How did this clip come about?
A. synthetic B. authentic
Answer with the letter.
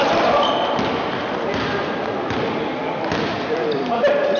B